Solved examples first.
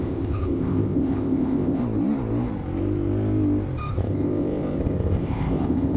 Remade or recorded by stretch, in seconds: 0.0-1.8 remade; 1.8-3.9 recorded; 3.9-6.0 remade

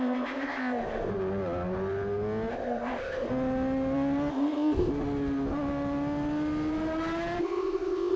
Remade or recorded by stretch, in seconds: 0.0-1.1 remade; 1.1-2.5 recorded; 2.5-3.3 remade; 3.3-4.3 recorded; 4.3-4.9 remade; 4.9-7.4 recorded; 7.4-8.2 remade

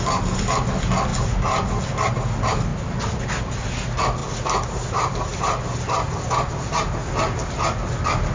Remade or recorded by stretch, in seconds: 0.0-8.3 recorded

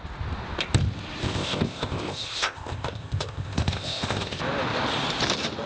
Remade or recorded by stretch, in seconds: 0.0-1.2 recorded; 1.2-4.4 remade; 4.4-5.7 recorded